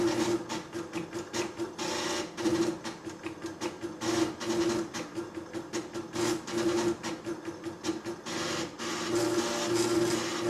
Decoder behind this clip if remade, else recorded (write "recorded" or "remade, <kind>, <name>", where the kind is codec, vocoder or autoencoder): recorded